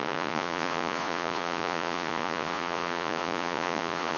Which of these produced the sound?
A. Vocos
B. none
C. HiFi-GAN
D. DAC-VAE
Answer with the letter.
A